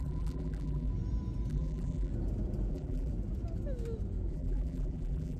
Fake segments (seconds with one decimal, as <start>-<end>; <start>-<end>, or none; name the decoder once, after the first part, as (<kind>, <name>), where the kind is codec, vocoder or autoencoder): 0.0-0.9 (vocoder, BigVGAN v2); 1.5-2.1; 2.7-3.1; 4.3-5.4